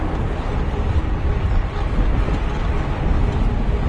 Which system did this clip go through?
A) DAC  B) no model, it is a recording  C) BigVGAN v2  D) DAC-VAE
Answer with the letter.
B